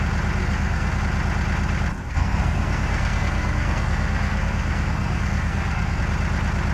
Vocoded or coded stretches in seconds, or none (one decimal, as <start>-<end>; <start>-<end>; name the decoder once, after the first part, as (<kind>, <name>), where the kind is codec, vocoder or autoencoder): 0.4-1.0 (codec, SNAC); 2.0-6.0